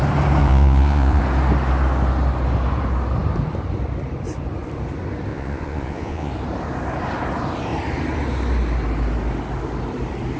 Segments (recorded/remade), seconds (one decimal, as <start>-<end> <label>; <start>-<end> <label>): 0.0-0.4 recorded; 0.4-1.2 remade; 1.2-5.3 recorded; 5.3-6.3 remade; 6.3-10.4 recorded